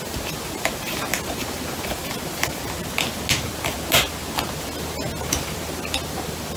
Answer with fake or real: real